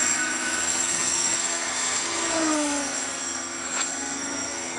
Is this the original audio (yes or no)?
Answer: no